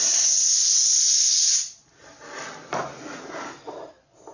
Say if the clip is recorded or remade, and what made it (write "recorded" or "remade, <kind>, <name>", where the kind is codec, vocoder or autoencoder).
recorded